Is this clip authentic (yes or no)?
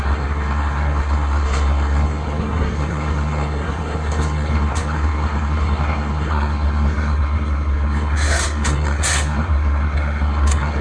no